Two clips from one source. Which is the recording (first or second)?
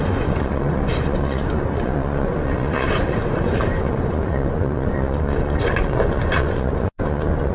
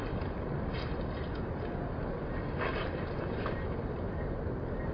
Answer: second